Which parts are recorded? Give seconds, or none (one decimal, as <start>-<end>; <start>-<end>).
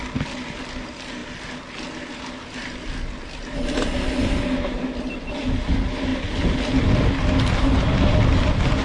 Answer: 0.0-8.8